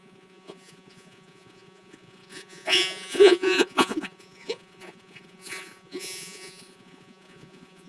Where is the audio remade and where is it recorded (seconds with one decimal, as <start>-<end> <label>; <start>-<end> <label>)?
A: 0.0-7.9 remade